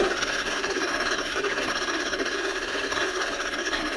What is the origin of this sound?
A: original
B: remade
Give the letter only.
B